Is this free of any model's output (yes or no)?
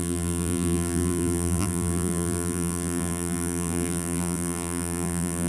no